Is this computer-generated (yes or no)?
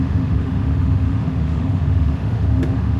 yes